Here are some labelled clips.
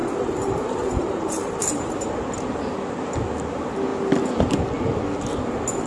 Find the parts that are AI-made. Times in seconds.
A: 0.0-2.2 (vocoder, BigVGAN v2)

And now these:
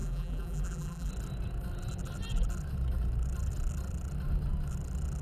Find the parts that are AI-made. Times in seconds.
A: 0.0-1.1 (vocoder, BigVGAN v2)

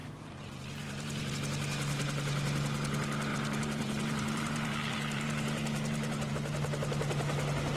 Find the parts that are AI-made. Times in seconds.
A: 0.0-1.3 (vocoder, BigVGAN v2); 3.3-6.3

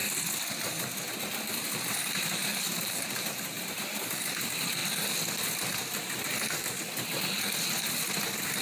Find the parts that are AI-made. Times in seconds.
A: 2.5-4.2 (vocoder, BigVGAN v2)

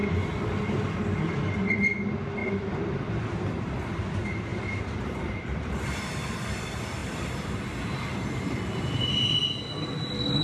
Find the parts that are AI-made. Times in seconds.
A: 2.4-3.1 (vocoder, BigVGAN v2); 4.5-6.2

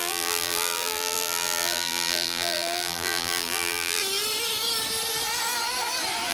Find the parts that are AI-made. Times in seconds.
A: 0.0-4.0 (vocoder, BigVGAN v2)